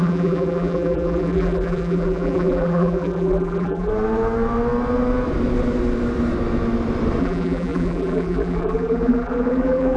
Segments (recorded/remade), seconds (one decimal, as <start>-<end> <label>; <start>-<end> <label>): 0.0-3.9 remade; 3.9-7.2 recorded; 7.2-10.0 remade